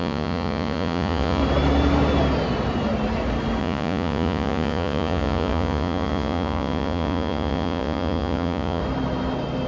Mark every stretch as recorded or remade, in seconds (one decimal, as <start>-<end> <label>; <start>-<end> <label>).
0.0-1.4 remade; 1.4-3.6 recorded; 3.6-8.8 remade; 8.8-9.7 recorded